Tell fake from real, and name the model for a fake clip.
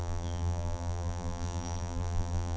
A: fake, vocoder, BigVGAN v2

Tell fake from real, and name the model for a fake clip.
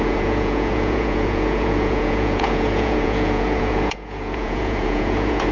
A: fake, vocoder, Vocos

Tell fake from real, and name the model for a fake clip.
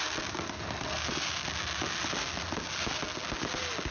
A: real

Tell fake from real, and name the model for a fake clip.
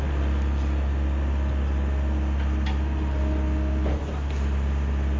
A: real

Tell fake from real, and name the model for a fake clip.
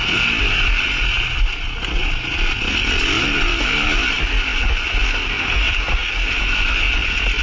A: real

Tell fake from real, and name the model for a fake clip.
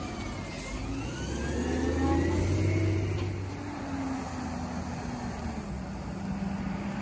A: real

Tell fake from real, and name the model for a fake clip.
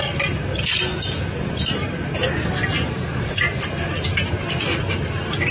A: fake, vocoder, BigVGAN v2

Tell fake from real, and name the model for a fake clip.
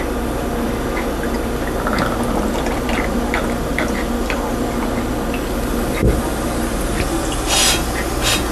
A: real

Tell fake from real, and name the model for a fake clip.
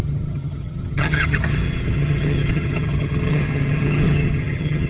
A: fake, vocoder, HiFi-GAN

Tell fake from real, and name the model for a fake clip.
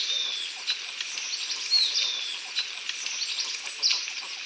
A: real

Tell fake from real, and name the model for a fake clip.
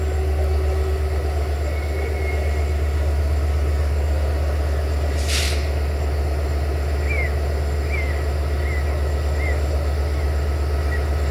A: real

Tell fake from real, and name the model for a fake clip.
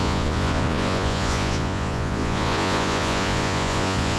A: fake, vocoder, Vocos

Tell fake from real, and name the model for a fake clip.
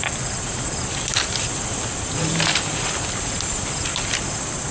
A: real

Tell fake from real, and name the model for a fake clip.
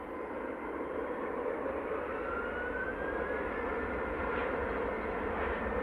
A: real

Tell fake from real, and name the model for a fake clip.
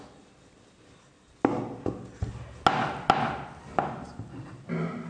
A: real